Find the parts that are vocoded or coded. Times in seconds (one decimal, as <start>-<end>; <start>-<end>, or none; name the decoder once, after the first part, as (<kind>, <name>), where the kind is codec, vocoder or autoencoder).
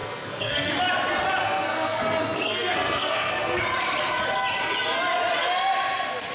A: 0.0-0.7 (codec, SNAC); 1.4-3.6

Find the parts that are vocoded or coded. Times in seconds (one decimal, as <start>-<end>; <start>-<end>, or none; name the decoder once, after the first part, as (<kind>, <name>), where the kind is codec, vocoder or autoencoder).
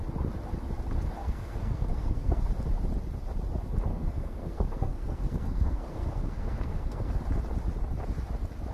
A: 1.2-2.4 (codec, SNAC); 3.9-7.2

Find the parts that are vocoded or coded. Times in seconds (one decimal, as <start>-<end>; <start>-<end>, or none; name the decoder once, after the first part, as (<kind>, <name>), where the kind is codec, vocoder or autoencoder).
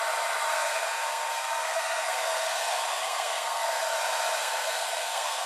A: 0.5-3.8 (codec, SNAC); 4.4-5.5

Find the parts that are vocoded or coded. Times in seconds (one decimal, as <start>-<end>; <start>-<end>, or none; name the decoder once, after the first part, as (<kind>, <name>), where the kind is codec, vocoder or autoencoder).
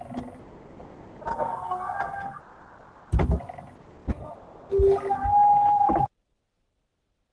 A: 1.3-2.4 (codec, SNAC)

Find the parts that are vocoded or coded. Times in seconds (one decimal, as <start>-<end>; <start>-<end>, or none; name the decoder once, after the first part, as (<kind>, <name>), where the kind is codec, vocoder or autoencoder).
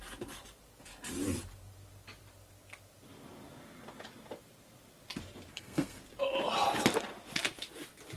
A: 5.5-6.0 (codec, SNAC)